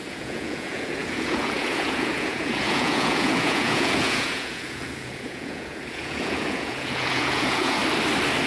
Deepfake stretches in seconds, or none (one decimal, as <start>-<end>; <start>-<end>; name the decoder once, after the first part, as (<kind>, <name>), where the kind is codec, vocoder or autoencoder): 0.0-7.8 (vocoder, Vocos)